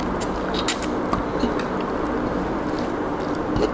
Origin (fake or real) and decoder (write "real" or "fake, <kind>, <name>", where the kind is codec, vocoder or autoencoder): real